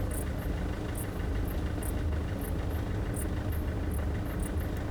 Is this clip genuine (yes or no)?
yes